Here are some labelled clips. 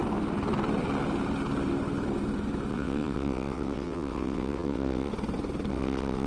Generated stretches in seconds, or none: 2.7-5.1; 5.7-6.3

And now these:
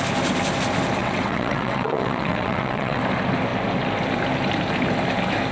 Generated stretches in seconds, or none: 1.0-3.0

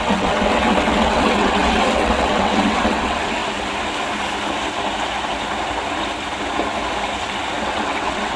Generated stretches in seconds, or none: 0.0-3.4; 7.6-8.4

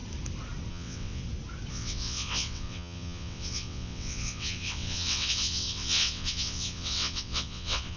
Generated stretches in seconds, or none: 0.7-1.2; 1.7-8.0

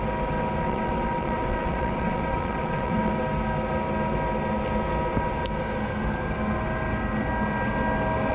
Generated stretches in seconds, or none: 0.6-3.1

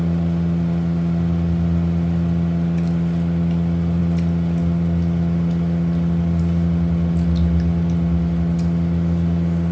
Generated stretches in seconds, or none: none

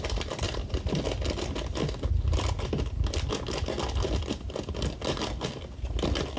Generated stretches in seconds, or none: none